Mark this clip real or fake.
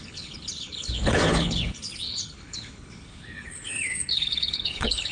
fake